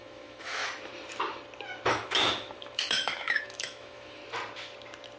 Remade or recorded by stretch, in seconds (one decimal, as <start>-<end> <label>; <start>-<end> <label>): 0.0-0.6 remade; 0.6-1.9 recorded; 1.9-4.2 remade; 4.2-5.2 recorded

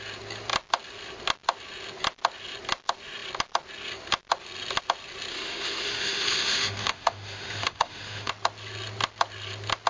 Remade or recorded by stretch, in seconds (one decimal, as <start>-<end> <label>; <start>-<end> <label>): 0.0-5.3 recorded; 5.3-8.3 remade; 8.3-9.9 recorded

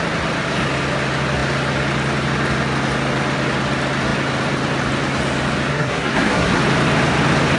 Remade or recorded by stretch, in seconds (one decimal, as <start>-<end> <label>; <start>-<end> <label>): 0.0-5.7 recorded; 5.7-6.6 remade; 6.6-7.6 recorded

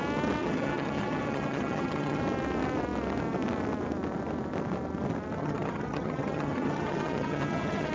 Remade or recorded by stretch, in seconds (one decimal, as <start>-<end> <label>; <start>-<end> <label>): 0.0-0.4 recorded; 0.4-2.2 remade; 2.2-5.4 recorded; 5.4-7.9 remade

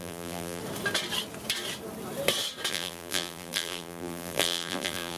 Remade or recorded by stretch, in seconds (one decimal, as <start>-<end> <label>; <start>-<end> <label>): 0.0-0.6 remade; 0.6-2.7 recorded; 2.7-5.2 remade